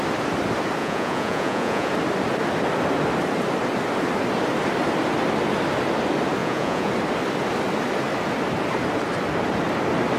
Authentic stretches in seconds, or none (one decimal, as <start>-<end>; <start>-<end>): 0.0-0.8; 1.9-6.4; 6.9-10.2